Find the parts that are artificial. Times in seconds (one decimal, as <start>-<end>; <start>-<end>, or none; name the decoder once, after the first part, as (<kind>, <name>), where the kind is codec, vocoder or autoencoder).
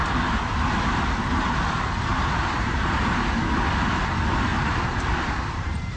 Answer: 2.1-3.0 (vocoder, BigVGAN v2); 4.5-6.0